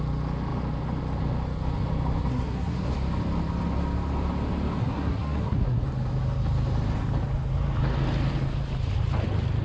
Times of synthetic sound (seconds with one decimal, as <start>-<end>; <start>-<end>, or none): 2.3-2.9; 4.8-5.8